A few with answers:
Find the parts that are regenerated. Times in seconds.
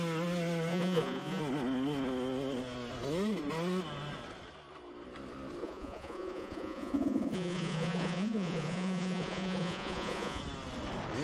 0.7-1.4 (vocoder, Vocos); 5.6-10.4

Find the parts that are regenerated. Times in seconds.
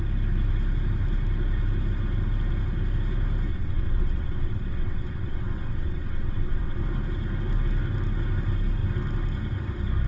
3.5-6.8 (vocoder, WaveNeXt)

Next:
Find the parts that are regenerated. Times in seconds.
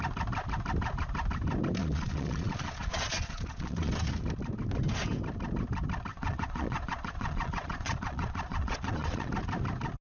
1.8-3.9 (vocoder, Vocos); 6.1-9.3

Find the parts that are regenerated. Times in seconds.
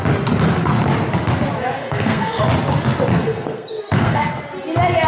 1.8-2.4 (codec, SNAC); 3.1-4.3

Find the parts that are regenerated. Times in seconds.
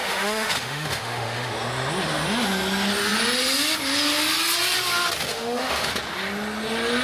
0.0-1.5 (autoencoder, DAC-VAE); 5.3-5.9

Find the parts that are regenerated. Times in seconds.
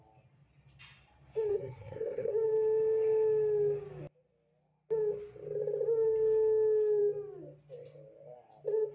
1.5-2.3 (codec, SNAC)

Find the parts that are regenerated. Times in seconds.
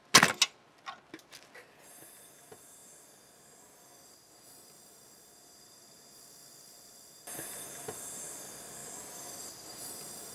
8.8-9.9 (vocoder, BigVGAN v2)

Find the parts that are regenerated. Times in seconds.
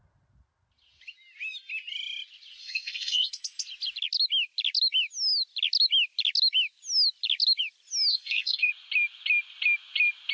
2.6-3.3 (codec, SNAC); 8.1-8.7